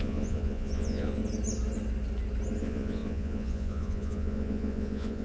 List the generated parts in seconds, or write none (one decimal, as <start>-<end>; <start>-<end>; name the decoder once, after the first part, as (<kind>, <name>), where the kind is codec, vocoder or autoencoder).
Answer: 0.0-1.2 (vocoder, Vocos); 2.6-5.2